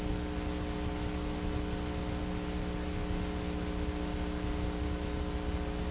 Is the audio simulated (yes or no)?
no